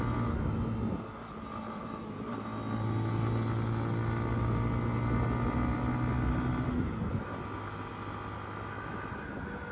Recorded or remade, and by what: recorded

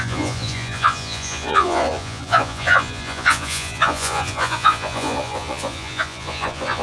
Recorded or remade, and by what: remade, vocoder, Vocos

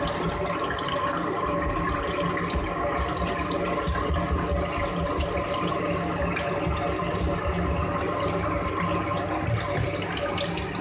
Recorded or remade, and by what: recorded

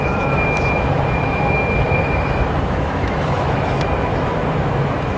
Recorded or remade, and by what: remade, autoencoder, DAC-VAE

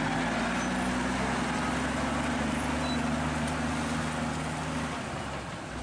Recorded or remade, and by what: recorded